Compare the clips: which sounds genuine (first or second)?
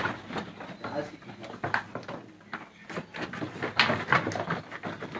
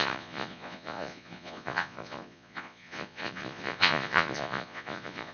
first